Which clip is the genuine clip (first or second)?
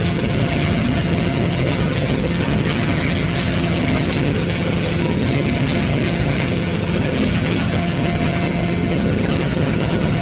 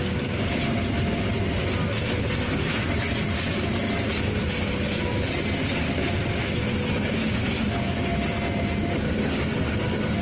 second